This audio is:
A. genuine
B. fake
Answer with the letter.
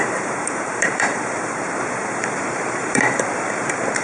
B